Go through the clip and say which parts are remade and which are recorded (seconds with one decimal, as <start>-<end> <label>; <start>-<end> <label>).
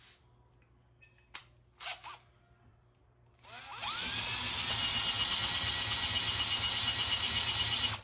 0.0-8.0 recorded